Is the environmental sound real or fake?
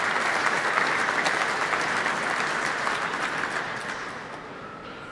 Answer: real